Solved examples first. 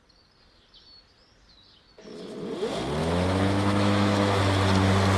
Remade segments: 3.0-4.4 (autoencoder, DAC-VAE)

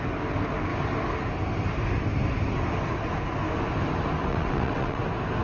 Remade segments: 4.3-5.0 (vocoder, WaveNeXt)